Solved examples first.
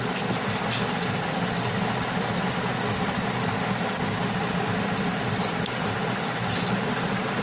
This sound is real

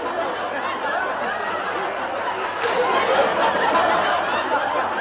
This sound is real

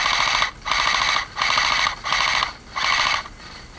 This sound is real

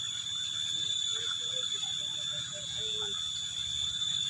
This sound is real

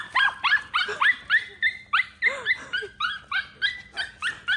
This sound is real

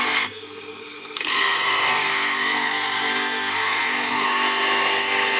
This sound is fake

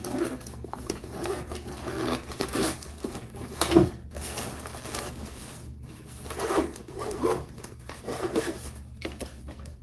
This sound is fake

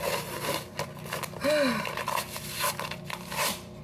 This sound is real